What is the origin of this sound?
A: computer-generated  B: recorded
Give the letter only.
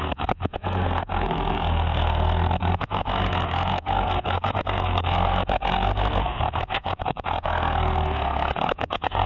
A